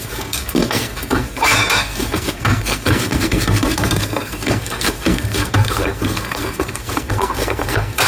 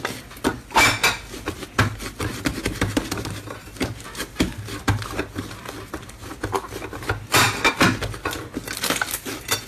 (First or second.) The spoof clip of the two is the first